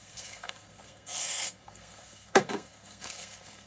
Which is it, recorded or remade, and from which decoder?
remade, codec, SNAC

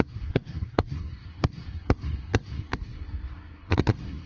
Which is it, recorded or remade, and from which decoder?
remade, codec, SNAC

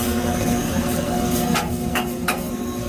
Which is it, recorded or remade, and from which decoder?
remade, codec, SNAC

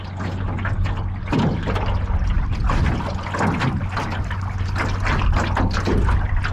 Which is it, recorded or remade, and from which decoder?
recorded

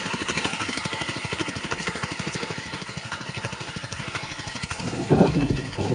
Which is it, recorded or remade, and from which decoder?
remade, codec, SNAC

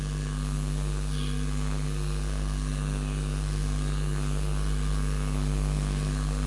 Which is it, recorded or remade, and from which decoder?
remade, codec, SNAC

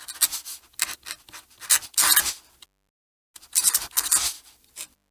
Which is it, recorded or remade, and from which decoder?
recorded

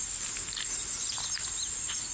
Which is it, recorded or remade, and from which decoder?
recorded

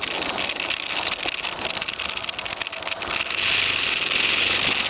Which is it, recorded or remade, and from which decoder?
recorded